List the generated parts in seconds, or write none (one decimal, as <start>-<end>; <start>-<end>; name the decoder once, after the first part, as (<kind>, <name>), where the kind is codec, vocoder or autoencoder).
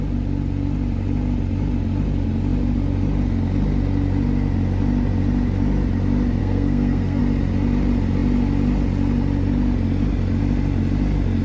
6.4-7.2 (codec, SNAC)